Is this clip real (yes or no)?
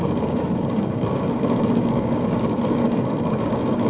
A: no